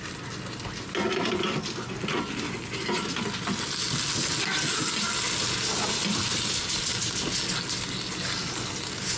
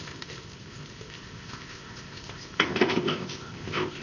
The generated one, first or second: second